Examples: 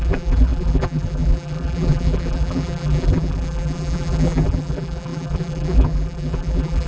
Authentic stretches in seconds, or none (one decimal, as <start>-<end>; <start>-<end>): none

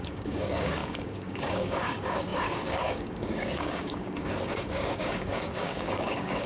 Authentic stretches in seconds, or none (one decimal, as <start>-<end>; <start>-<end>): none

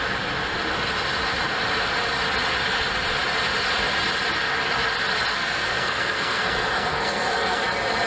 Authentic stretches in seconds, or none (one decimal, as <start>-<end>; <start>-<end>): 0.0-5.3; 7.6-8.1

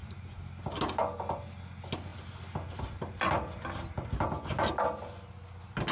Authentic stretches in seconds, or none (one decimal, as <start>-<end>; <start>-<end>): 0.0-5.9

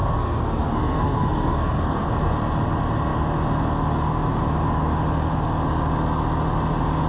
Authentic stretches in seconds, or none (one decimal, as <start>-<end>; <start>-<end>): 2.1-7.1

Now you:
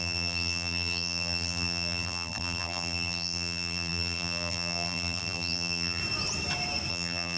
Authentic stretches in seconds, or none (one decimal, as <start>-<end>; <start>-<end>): 6.0-6.9